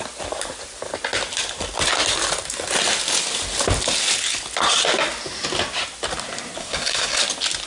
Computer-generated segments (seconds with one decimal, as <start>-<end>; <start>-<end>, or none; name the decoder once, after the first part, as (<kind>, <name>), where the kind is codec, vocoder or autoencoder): 6.6-7.2 (codec, SNAC)